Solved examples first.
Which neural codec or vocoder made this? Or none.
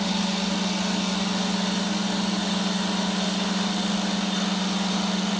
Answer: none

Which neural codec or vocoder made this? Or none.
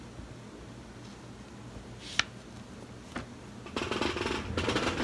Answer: none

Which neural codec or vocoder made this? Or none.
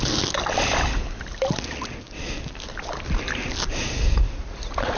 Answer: none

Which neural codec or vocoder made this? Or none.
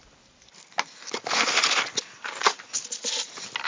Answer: none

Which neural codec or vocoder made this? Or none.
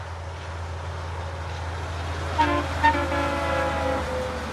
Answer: none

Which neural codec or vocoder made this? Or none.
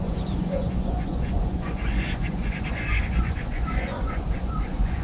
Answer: vocoder, Vocos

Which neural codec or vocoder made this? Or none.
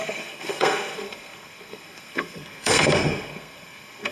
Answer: codec, SNAC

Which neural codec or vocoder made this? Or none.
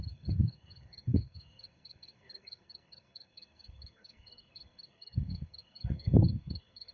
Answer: codec, SNAC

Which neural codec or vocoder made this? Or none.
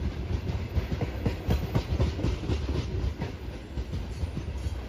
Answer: none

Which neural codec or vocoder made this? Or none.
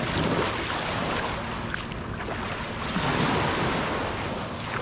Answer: none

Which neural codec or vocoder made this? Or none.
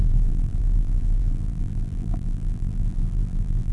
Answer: vocoder, BigVGAN v2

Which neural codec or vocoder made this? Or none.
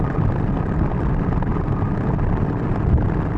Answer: none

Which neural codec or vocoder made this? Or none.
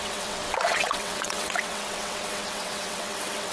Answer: vocoder, WaveNeXt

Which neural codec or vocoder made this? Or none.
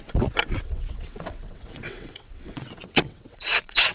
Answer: vocoder, WaveNeXt